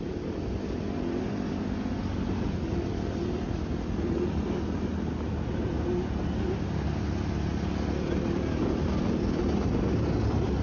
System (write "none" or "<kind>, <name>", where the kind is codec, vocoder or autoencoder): none